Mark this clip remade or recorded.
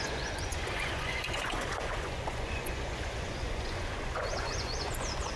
remade